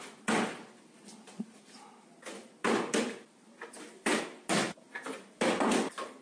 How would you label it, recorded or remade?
recorded